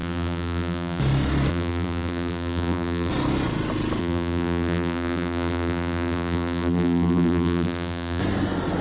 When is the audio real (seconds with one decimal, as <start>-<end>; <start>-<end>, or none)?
1.0-1.5; 3.1-4.0; 8.2-8.8